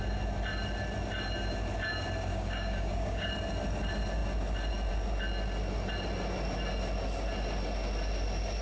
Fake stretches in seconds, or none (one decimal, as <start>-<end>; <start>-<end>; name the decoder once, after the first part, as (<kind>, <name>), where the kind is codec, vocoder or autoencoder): 2.3-3.3 (codec, DAC)